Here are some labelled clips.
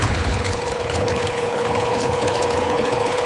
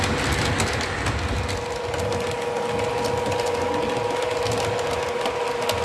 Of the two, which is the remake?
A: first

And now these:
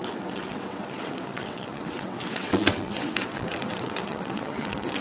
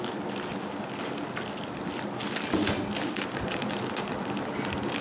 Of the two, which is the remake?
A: first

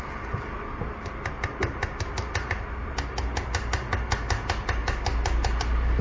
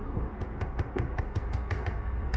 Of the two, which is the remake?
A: second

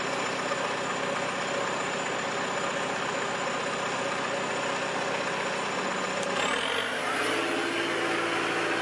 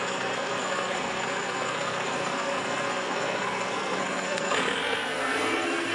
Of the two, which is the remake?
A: second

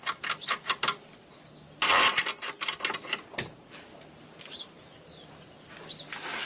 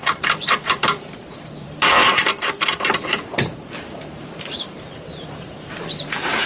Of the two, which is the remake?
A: second